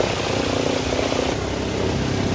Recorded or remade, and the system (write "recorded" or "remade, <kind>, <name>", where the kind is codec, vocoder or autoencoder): recorded